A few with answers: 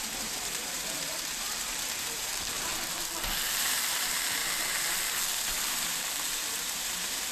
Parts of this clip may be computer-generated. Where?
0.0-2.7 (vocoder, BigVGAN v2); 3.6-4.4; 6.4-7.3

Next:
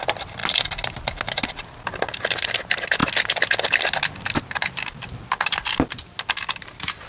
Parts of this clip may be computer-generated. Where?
none

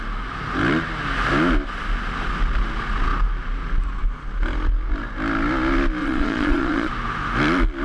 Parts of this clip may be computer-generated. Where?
6.0-6.9 (vocoder, Vocos)